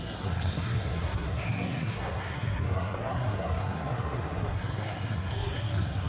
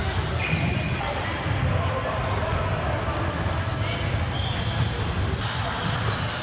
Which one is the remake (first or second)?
first